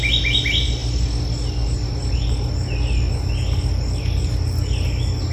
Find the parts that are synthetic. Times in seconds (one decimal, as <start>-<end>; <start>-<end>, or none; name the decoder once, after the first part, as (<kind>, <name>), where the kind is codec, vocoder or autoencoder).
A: none